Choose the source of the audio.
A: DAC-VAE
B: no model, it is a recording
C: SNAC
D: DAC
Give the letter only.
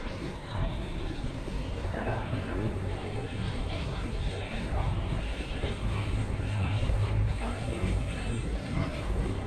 C